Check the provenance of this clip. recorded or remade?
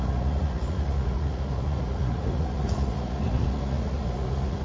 remade